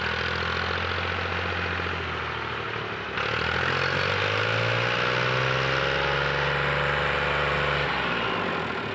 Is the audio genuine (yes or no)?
yes